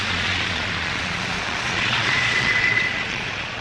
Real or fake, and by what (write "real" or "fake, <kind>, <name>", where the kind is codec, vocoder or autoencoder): fake, vocoder, Vocos